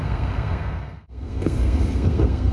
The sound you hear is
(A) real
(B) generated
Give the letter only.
B